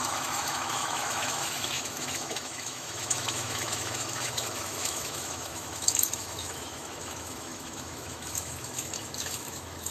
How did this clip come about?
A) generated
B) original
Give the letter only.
A